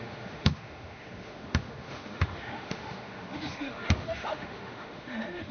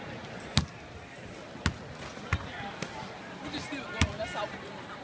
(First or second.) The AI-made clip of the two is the first